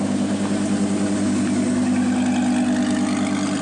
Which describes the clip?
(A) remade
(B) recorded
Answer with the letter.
B